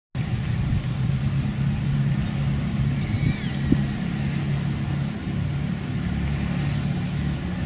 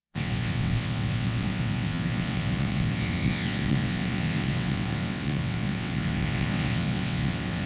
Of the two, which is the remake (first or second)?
second